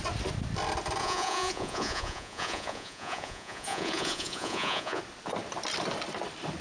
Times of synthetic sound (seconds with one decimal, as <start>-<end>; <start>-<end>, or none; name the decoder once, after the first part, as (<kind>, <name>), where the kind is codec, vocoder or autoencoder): 1.0-5.0 (vocoder, Vocos)